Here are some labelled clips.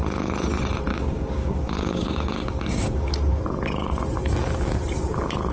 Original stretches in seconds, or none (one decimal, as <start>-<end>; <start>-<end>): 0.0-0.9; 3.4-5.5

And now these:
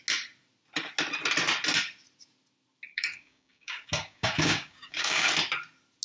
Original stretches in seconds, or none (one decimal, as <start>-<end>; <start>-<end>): 0.0-2.9; 5.3-6.0

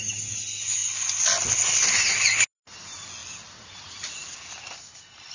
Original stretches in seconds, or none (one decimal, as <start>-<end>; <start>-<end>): 0.0-5.3

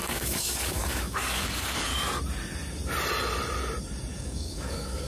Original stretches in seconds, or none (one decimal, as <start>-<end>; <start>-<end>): 1.9-4.1

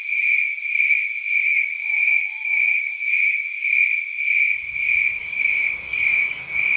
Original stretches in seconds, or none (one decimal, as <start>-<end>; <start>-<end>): 0.0-1.5; 3.1-5.2

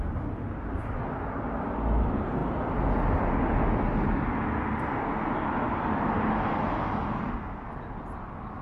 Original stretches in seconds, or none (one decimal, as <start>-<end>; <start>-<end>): 0.0-8.6

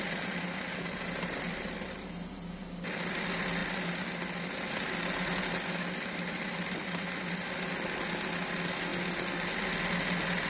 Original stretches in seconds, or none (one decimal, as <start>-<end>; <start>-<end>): 0.0-10.5